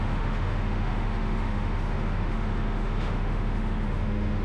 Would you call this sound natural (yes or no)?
no